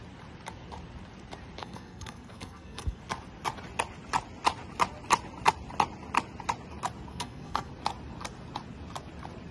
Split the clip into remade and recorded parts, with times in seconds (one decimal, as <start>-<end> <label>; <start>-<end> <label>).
0.0-1.6 recorded; 1.6-3.0 remade; 3.0-7.1 recorded; 7.1-7.7 remade; 7.7-9.5 recorded